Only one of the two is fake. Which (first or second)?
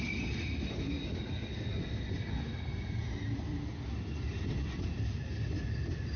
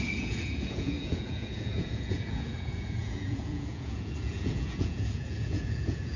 second